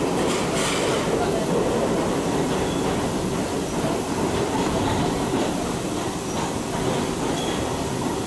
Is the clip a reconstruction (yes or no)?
no